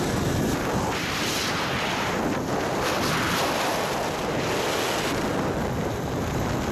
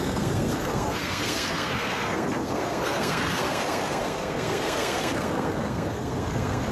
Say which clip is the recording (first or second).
first